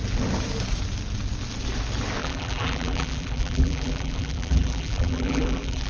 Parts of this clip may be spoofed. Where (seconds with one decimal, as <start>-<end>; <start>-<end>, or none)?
2.2-5.9